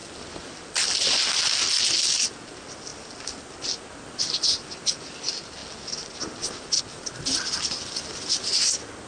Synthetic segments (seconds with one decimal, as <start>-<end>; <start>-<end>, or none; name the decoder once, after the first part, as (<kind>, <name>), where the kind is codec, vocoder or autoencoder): none